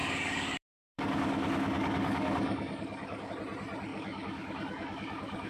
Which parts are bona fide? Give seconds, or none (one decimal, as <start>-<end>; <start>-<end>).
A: 3.3-3.9

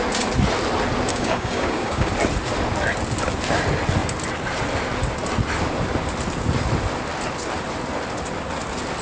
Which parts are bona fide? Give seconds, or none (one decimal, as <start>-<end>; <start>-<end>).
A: 0.0-1.1; 2.1-9.0

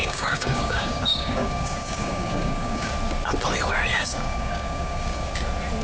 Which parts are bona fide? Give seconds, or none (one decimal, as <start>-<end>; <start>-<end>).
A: 2.9-3.9; 5.3-5.8

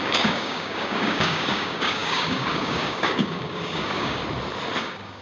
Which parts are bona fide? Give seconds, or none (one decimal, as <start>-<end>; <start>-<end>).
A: 4.2-4.8